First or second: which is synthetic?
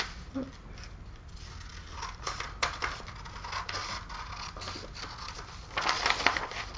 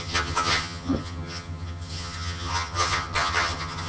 second